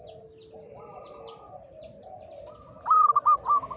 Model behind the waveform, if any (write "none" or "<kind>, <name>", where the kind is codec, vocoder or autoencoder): none